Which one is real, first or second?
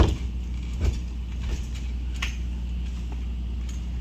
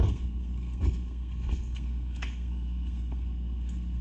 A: first